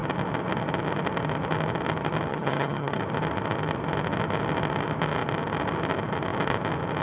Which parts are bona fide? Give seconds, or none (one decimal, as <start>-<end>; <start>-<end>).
0.0-2.3; 3.0-7.0